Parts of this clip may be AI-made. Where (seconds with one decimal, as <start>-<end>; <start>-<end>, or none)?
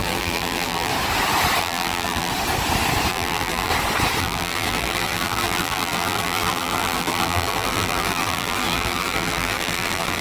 0.0-0.9; 1.6-2.3; 3.1-3.7; 4.2-10.2